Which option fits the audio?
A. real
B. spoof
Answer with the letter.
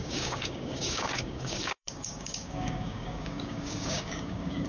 B